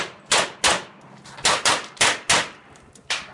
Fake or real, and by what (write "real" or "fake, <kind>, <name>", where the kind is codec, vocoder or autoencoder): real